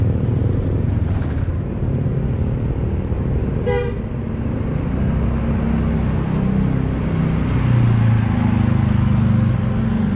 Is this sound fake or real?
real